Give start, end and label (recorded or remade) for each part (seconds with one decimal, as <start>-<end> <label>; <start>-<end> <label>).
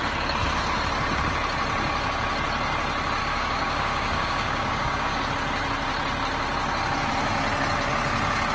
0.0-3.2 recorded; 3.2-5.2 remade; 5.2-8.5 recorded